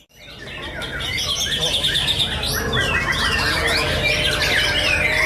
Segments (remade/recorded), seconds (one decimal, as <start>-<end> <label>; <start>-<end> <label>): 0.0-5.3 recorded